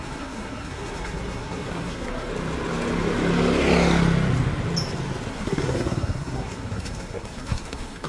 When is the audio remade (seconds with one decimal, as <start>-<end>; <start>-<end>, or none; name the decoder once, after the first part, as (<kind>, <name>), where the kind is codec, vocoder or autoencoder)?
0.0-2.3 (codec, SNAC); 5.3-8.1